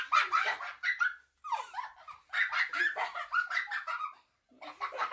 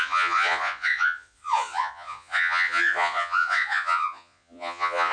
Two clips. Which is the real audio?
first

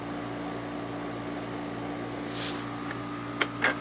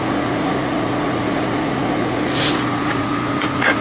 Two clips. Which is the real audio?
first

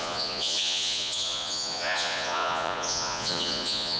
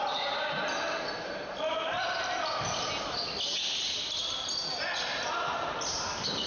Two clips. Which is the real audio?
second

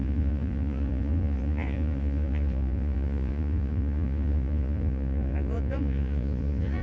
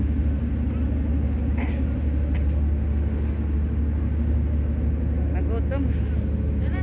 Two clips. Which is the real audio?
second